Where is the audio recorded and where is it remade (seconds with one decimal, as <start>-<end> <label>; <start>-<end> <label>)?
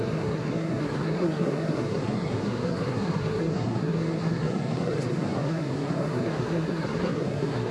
0.0-7.7 remade